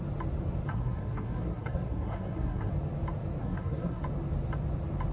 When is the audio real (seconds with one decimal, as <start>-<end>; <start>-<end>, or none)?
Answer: 0.0-0.7; 2.7-3.4; 4.0-5.1